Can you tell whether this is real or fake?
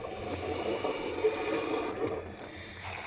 real